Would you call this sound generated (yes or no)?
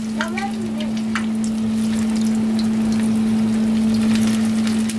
no